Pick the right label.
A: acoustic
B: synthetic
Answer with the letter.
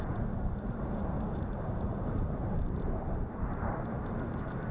B